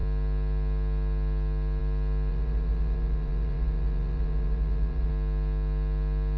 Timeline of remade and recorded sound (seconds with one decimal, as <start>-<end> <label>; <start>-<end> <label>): 0.0-2.3 recorded; 2.3-5.1 remade; 5.1-6.4 recorded